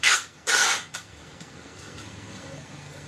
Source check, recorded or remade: remade